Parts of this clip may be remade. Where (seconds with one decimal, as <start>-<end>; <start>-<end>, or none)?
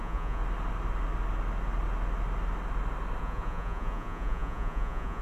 0.0-0.4; 3.2-5.2